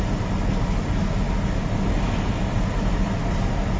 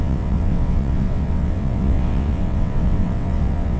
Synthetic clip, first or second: second